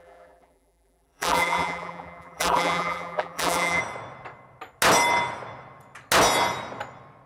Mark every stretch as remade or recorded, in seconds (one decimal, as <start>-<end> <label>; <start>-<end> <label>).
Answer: 0.0-3.8 remade; 3.8-7.3 recorded